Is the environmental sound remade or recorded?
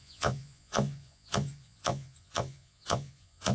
remade